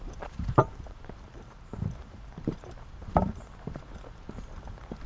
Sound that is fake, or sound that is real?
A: fake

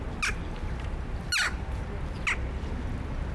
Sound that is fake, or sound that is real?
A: real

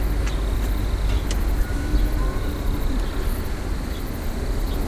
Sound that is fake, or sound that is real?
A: real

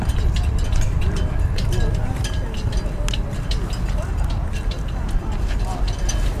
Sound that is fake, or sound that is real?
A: real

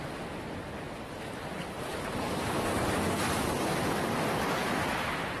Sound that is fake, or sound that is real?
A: fake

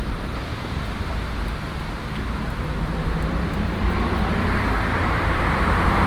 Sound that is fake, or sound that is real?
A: fake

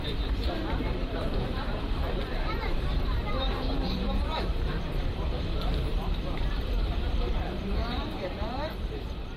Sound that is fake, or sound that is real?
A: fake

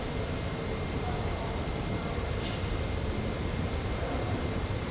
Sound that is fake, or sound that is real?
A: fake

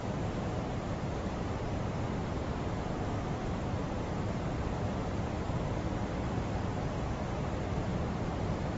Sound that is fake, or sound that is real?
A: fake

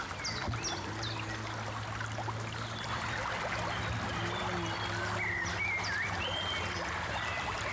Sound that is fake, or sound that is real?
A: real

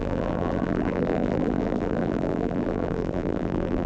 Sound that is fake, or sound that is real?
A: fake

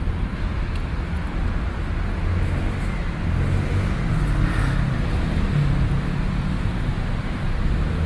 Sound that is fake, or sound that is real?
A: real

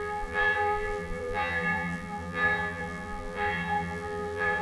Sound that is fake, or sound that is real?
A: fake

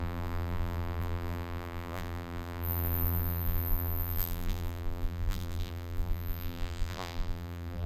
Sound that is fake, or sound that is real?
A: fake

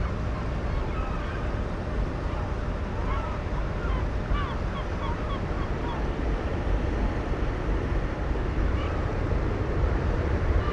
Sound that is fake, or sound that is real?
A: fake